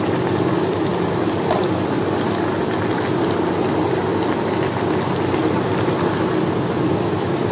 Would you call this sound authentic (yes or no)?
yes